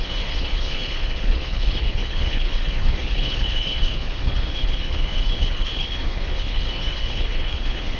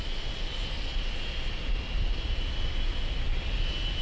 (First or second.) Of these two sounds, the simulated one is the first